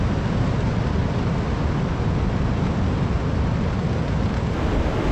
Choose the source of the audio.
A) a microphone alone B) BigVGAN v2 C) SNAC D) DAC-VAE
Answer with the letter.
A